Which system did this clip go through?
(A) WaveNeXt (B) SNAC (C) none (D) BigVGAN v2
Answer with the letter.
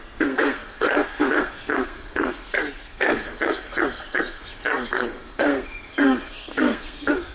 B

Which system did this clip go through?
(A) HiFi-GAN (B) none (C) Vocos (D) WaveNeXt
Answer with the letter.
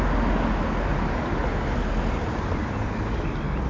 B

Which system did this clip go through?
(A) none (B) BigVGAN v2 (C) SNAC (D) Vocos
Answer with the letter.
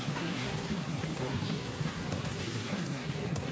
C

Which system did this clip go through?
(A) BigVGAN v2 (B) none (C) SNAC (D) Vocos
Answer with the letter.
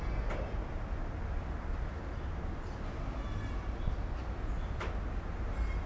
B